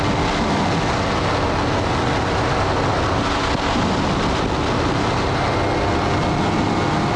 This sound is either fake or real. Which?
real